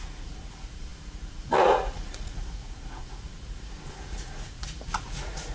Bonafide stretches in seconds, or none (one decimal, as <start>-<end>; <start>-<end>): none